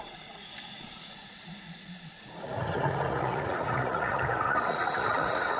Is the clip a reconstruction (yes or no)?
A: yes